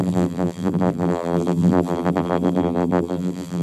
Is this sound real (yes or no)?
no